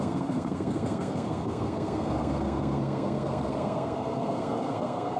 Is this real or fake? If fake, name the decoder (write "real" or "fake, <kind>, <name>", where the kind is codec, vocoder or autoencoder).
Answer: fake, codec, SNAC